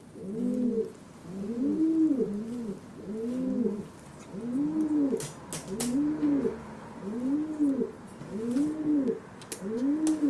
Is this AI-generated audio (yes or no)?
no